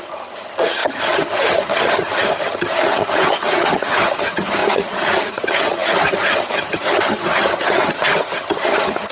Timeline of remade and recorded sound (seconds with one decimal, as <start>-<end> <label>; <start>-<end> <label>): 0.0-9.1 remade